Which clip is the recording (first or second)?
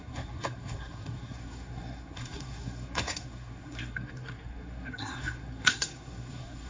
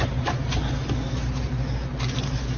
second